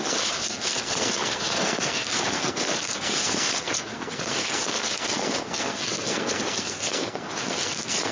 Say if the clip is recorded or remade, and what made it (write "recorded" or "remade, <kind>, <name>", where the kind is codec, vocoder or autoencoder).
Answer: remade, codec, SNAC